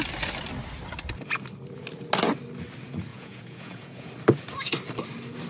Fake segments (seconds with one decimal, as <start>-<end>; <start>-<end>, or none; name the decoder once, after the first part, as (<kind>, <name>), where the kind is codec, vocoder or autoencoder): 3.1-4.1 (vocoder, Vocos)